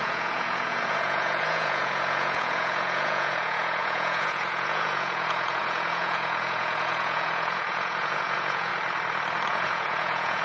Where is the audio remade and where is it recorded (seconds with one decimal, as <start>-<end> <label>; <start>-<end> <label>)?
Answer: 0.0-8.7 remade; 8.7-9.5 recorded; 9.5-10.4 remade